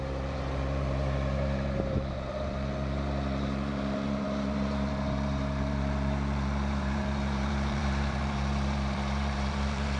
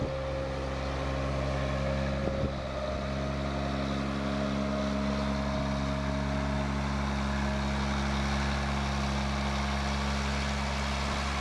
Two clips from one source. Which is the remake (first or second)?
first